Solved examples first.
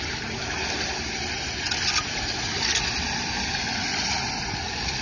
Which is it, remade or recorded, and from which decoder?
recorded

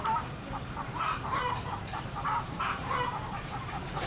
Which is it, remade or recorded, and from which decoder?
remade, vocoder, BigVGAN v2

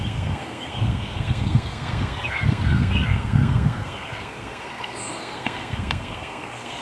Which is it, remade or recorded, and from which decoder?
remade, codec, SNAC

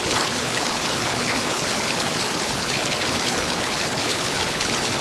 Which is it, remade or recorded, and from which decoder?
remade, codec, HILCodec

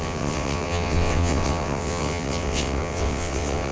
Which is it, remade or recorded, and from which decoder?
remade, vocoder, WaveNeXt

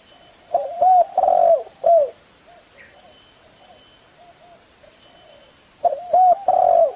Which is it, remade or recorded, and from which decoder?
recorded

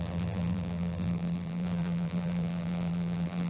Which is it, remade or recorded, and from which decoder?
remade, vocoder, BigVGAN v2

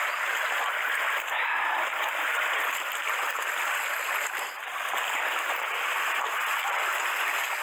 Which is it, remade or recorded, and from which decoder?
recorded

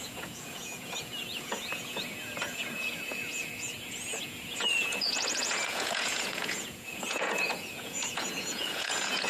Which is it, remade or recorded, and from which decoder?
remade, vocoder, Vocos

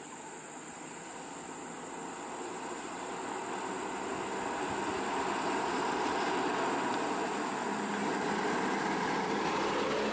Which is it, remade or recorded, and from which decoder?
recorded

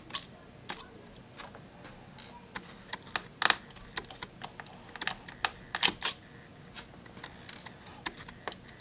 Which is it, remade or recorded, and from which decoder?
recorded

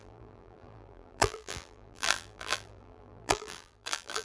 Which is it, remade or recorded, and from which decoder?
remade, vocoder, BigVGAN v2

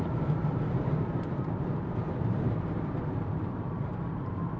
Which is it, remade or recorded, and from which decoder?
remade, vocoder, BigVGAN v2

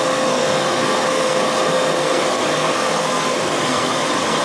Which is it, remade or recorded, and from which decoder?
remade, codec, SNAC